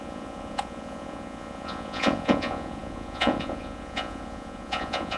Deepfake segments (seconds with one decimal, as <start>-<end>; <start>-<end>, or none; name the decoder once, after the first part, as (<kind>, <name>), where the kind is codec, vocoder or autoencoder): 0.0-5.2 (vocoder, Vocos)